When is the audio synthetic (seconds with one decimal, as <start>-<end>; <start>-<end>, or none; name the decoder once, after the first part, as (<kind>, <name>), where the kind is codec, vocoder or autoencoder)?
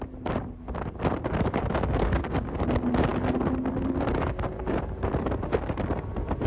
2.0-2.6 (codec, SNAC)